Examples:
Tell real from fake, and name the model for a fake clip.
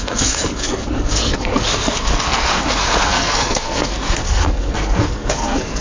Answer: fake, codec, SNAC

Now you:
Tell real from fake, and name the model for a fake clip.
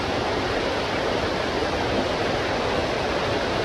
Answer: real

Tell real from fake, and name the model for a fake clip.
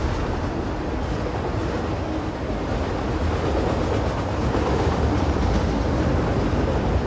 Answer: real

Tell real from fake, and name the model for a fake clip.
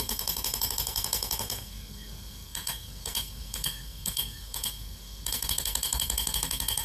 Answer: fake, codec, SNAC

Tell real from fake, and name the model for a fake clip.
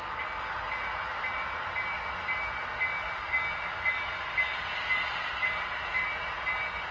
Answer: real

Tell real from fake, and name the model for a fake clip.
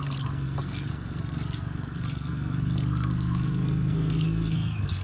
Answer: fake, codec, SNAC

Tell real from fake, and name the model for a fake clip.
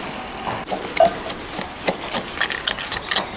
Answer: real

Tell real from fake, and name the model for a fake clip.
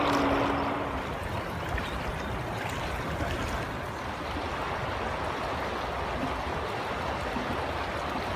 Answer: real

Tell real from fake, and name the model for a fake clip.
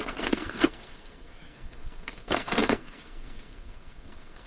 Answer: fake, codec, SNAC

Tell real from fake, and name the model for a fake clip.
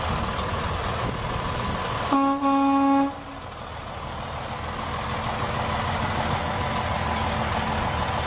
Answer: real